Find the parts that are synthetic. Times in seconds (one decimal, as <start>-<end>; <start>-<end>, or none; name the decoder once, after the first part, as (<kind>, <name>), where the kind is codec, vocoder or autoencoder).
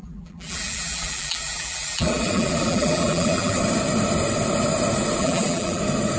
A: 0.0-3.6 (vocoder, BigVGAN v2); 5.2-5.8